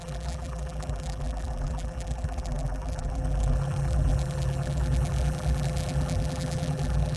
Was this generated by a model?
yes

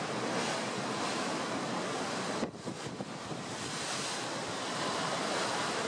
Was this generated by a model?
yes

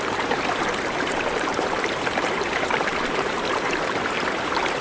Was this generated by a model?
yes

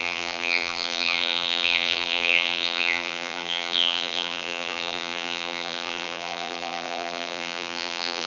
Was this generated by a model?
yes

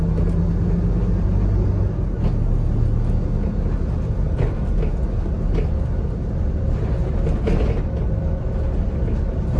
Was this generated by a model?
no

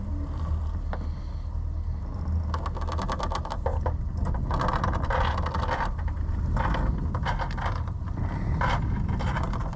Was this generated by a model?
no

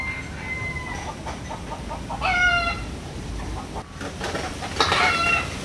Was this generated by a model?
no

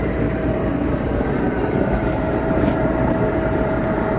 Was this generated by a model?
yes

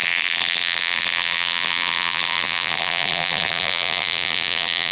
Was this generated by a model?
yes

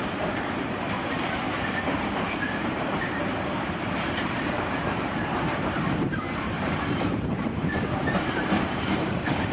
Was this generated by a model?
yes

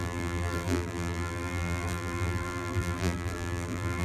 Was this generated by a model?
yes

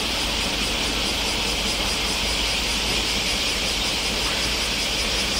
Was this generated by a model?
no